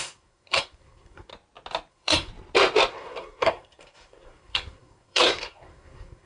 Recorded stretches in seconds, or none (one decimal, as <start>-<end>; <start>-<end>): 1.3-1.9; 2.3-2.9